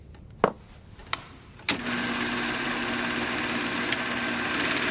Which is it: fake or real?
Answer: real